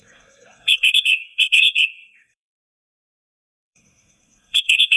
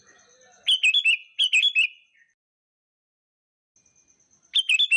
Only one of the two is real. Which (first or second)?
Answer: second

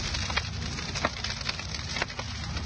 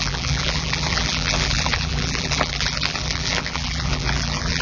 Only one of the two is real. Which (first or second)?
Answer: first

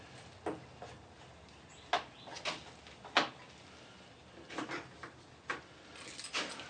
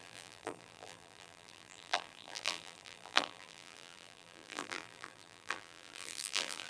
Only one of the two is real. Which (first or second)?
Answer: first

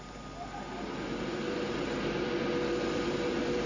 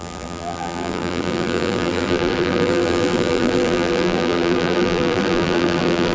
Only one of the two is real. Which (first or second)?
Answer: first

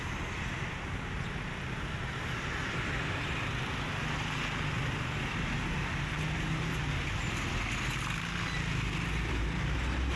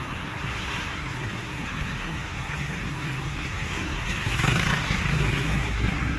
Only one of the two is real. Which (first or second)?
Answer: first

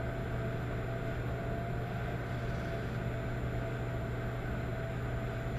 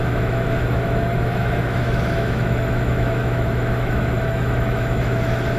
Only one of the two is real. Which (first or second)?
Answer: first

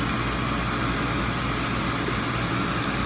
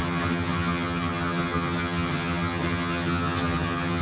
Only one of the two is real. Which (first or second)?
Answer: first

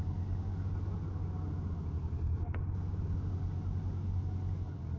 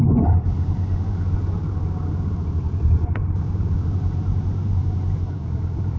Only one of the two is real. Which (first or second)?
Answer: first